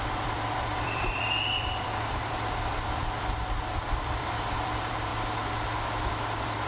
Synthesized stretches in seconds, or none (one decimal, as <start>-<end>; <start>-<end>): 0.0-5.1; 6.1-6.7